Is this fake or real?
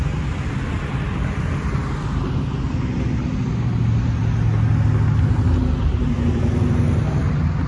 real